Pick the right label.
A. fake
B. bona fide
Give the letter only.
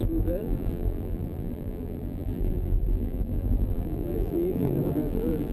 A